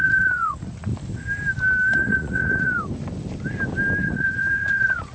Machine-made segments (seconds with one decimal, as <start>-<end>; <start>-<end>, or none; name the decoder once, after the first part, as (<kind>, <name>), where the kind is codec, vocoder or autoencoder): 0.0-0.9 (vocoder, Vocos); 1.9-2.8; 4.0-5.1